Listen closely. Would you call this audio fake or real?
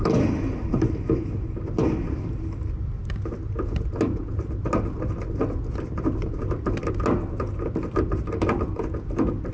real